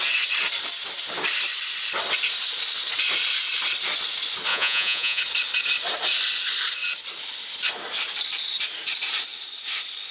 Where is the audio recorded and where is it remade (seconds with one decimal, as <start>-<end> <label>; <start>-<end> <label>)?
0.0-4.5 recorded; 4.5-5.2 remade; 5.2-10.1 recorded